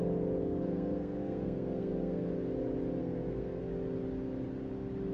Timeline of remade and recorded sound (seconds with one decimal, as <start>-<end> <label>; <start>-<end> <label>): 0.0-0.4 recorded; 0.4-2.3 remade; 2.3-3.0 recorded; 3.0-3.6 remade; 3.6-5.1 recorded